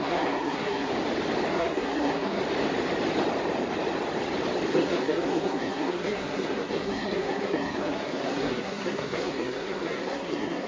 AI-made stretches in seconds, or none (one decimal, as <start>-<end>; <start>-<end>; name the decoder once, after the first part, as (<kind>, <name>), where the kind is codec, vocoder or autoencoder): 0.0-0.9 (codec, SNAC); 1.5-2.4; 4.7-10.7